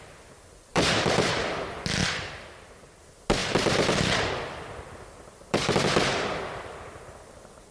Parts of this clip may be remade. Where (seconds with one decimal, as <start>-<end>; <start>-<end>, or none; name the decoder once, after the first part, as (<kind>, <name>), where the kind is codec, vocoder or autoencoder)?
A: 0.7-1.3 (vocoder, BigVGAN v2); 2.0-3.0; 3.4-5.9